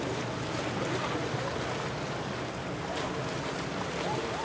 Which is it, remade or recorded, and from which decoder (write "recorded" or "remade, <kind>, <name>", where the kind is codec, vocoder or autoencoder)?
recorded